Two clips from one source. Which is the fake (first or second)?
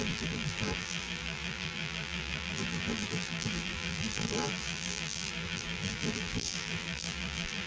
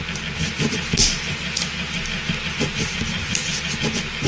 first